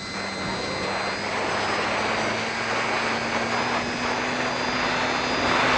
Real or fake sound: real